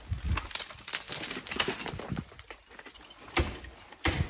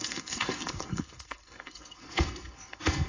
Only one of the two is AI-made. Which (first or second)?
second